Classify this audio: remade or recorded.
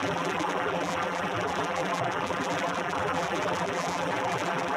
remade